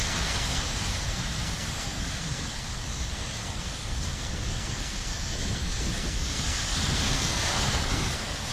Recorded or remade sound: remade